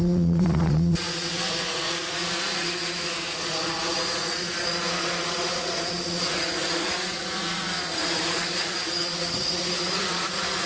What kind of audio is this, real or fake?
fake